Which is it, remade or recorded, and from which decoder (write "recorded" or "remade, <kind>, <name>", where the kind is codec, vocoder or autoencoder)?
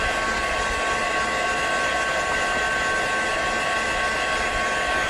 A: recorded